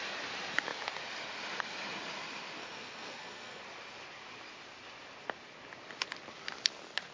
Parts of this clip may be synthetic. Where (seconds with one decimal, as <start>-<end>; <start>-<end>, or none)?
2.6-3.6